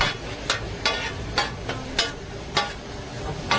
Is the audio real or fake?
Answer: real